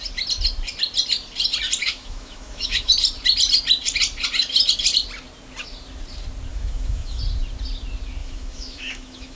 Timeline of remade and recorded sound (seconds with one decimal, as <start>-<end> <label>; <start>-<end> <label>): 0.0-1.8 recorded; 1.8-2.9 remade; 2.9-6.5 recorded; 6.5-7.2 remade; 7.2-8.2 recorded; 8.2-9.4 remade